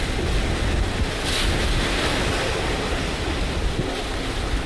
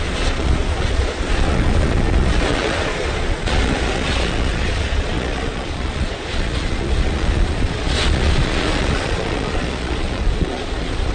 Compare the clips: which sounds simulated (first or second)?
second